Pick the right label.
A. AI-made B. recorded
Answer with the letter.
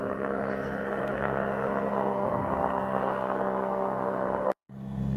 A